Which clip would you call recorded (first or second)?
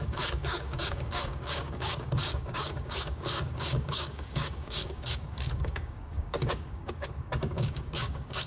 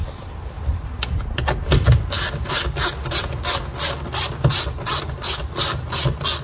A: second